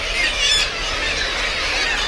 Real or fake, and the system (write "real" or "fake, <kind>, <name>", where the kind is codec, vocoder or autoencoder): fake, vocoder, BigVGAN v2